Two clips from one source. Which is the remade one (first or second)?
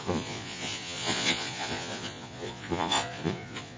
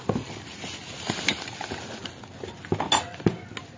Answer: first